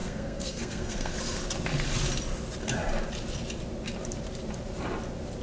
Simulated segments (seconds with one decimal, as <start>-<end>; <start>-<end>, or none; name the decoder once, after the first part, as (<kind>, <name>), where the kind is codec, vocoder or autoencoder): 0.0-1.1 (codec, SNAC)